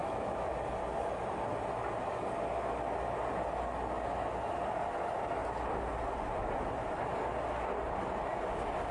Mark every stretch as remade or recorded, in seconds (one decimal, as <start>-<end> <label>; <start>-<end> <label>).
0.0-0.5 remade; 0.5-8.9 recorded